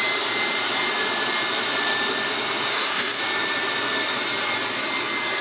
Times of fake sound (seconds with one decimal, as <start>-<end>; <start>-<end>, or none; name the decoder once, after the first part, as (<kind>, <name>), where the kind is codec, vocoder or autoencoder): 2.7-3.2 (codec, DAC)